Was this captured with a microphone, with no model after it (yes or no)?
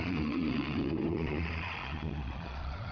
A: no